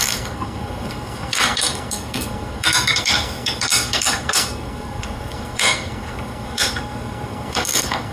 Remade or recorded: remade